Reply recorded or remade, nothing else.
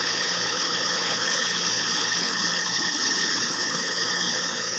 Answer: remade